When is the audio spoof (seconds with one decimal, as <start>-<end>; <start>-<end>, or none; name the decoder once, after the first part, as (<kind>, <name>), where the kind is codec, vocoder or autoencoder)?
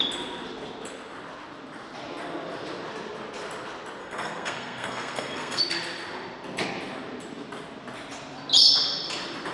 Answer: 4.0-5.6 (codec, SNAC)